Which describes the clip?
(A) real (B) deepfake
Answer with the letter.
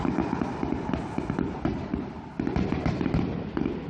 A